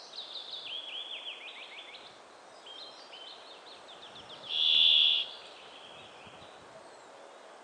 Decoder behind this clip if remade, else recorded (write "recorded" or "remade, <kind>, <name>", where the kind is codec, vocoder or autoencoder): recorded